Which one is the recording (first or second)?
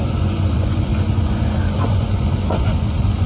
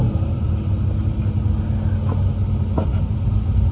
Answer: second